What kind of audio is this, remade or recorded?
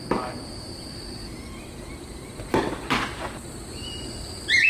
remade